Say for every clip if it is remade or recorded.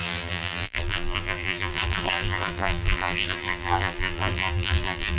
remade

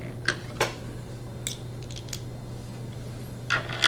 recorded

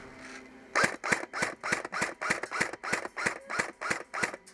recorded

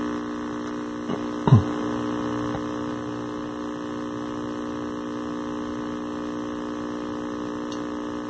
recorded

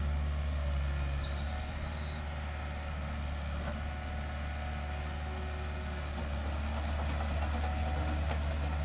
recorded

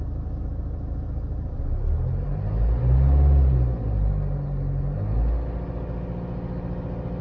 recorded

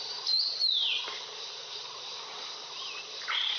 remade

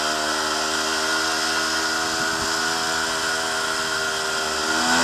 recorded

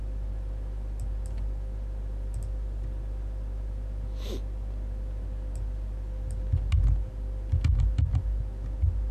recorded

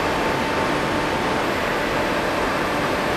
recorded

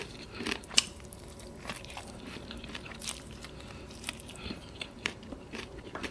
remade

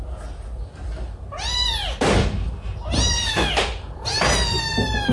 recorded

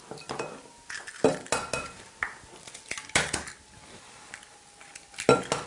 recorded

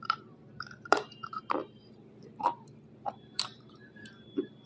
remade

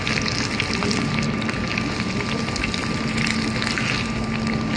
recorded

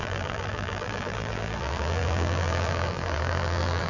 remade